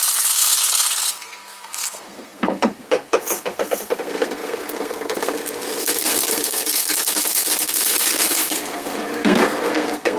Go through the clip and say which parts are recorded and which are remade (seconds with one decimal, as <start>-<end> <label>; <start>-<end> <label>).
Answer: 0.0-10.2 remade